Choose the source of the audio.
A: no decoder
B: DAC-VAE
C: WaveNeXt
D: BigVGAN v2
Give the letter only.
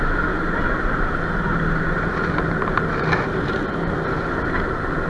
D